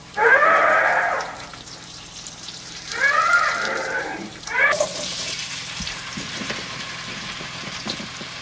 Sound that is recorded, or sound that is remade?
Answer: remade